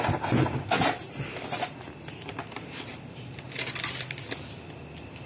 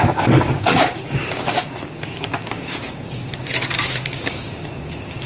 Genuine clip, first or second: first